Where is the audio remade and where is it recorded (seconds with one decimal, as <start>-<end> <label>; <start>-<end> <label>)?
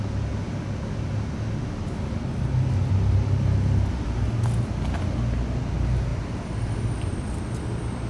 0.0-8.1 recorded